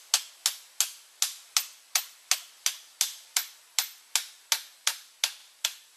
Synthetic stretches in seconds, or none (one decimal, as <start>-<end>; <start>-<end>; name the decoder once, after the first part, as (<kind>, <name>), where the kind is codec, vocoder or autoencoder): none